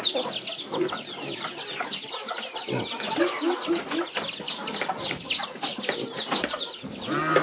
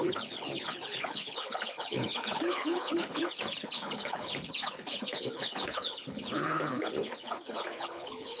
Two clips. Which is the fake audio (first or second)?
second